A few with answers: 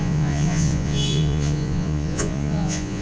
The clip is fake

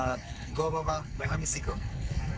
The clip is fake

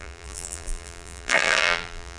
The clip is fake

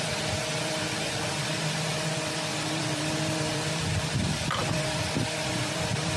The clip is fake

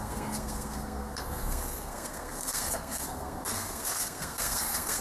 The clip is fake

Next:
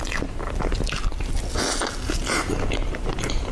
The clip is real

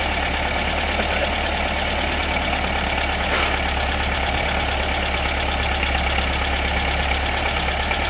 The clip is real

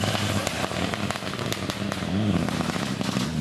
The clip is real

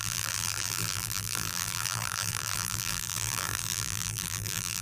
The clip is fake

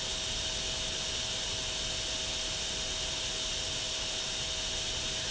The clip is real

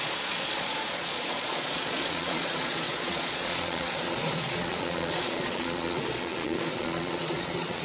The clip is fake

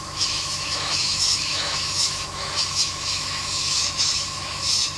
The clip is fake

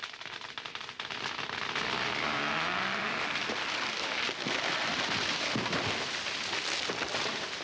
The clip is real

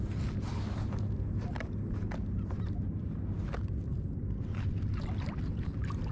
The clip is real